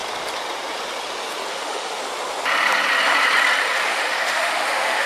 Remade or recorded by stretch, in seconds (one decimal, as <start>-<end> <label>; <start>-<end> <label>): 0.0-1.5 recorded; 1.5-2.0 remade; 2.0-3.8 recorded; 3.8-5.1 remade